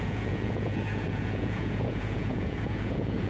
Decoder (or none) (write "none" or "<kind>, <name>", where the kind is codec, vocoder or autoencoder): vocoder, Vocos